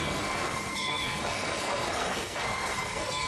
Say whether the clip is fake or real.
fake